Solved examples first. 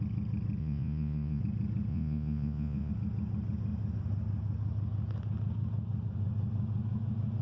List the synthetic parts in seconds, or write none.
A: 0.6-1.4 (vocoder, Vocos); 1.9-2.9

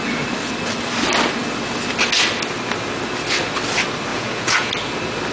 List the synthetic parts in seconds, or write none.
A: 4.1-4.7 (vocoder, Vocos)

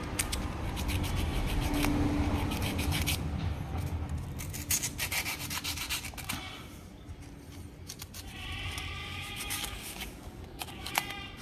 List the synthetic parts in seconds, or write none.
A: 9.0-10.9 (codec, DAC)